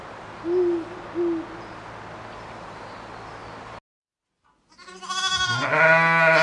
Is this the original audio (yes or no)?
yes